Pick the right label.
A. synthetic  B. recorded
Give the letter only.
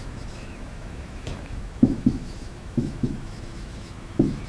A